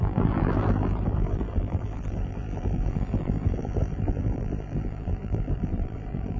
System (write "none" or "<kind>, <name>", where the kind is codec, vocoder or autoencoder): vocoder, BigVGAN v2